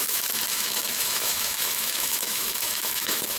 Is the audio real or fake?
fake